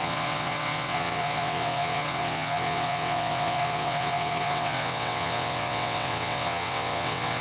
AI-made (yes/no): yes